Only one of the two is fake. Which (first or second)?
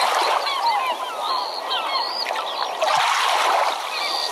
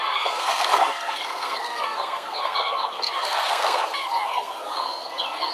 second